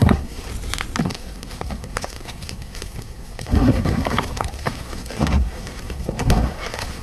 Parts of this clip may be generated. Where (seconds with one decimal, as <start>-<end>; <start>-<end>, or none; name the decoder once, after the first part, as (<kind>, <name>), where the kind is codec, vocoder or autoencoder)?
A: 0.0-0.5 (codec, SNAC); 1.0-7.0